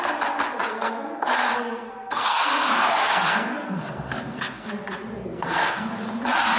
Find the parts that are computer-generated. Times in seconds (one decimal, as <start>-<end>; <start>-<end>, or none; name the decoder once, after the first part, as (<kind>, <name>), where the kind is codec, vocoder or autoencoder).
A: 0.7-4.7 (codec, SNAC); 5.2-5.9